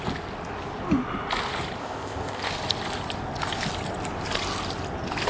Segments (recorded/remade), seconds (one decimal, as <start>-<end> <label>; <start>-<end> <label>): 0.0-1.8 recorded; 1.8-2.5 remade; 2.5-5.3 recorded